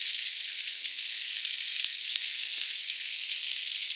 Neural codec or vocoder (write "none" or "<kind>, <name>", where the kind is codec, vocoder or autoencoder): codec, SNAC